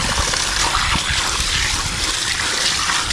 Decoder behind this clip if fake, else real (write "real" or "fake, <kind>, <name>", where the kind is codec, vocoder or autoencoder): real